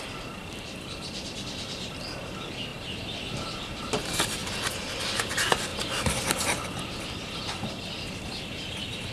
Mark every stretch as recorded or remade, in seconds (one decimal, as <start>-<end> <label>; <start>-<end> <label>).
0.0-4.4 remade; 4.4-5.3 recorded; 5.3-5.7 remade; 5.7-7.7 recorded; 7.7-9.1 remade